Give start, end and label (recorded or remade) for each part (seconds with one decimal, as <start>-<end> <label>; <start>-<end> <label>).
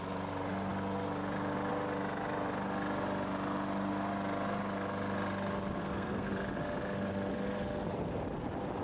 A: 0.0-5.8 recorded; 5.8-6.3 remade; 6.3-8.8 recorded